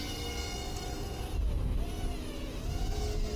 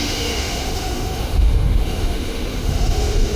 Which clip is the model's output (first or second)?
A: second